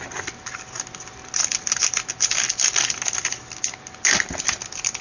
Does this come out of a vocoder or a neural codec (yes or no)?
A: no